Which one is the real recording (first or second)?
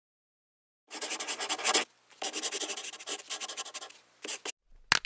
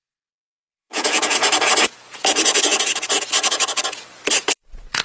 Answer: first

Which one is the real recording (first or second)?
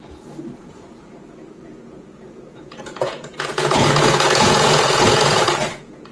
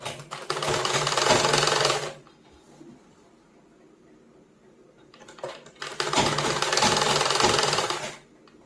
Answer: second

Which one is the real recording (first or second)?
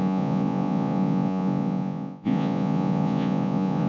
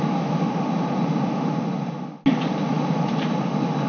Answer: second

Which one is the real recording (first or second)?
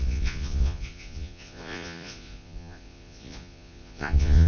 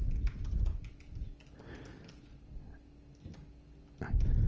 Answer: second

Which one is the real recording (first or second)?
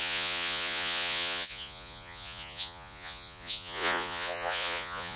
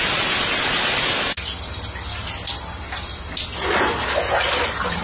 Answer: second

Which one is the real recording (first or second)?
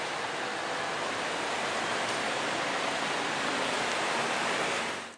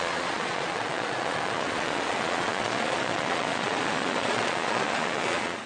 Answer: first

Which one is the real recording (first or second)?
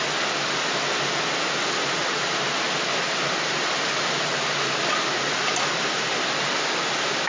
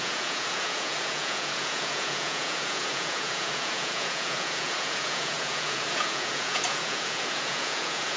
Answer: first